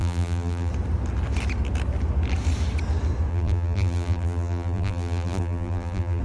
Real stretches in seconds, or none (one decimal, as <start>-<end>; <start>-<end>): 0.7-3.3

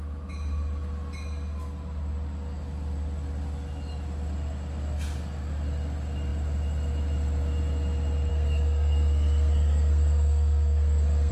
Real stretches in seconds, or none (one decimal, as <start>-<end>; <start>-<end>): 0.0-8.3

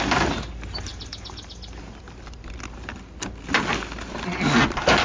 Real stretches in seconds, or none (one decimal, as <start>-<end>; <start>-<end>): 0.0-5.0

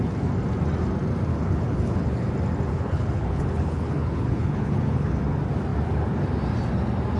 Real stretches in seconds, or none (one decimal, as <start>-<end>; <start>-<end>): 0.0-1.3; 2.3-2.7; 5.1-7.2

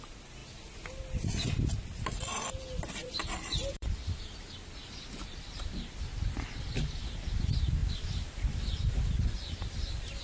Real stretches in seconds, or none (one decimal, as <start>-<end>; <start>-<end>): 0.0-3.0; 4.5-7.8; 9.2-10.2

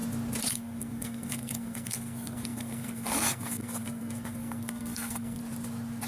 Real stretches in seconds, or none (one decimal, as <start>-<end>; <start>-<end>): 0.0-0.5; 5.4-6.1

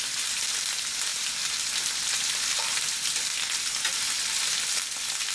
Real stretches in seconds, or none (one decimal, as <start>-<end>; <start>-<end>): 0.0-5.3

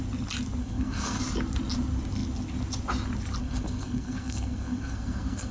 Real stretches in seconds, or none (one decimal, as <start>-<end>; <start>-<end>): 0.0-0.6; 1.2-3.4